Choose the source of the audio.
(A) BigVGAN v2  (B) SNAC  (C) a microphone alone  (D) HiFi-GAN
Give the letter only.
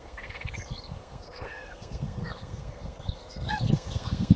B